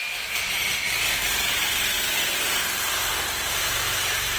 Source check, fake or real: real